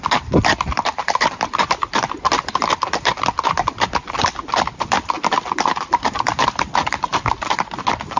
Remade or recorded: remade